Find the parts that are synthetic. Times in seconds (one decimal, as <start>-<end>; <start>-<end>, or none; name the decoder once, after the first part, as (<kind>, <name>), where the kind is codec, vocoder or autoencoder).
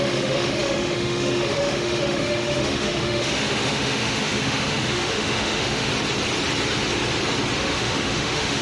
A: 0.0-5.9 (autoencoder, DAC-VAE); 7.6-8.6